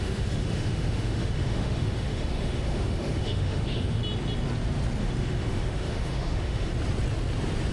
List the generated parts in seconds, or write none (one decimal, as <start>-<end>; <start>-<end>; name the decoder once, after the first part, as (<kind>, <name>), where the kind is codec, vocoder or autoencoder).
0.0-4.0 (autoencoder, DAC-VAE); 5.0-6.7